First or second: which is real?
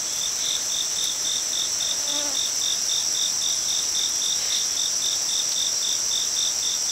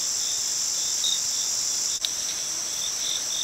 first